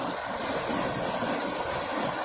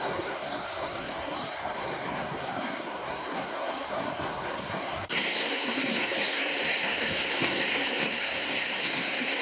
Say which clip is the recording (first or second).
first